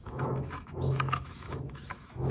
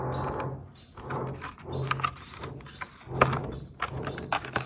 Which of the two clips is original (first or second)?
second